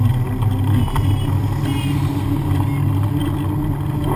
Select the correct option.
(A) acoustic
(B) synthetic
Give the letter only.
A